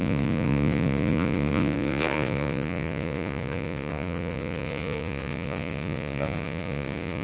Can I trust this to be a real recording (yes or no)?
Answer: no